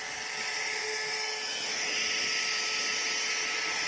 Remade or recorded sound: recorded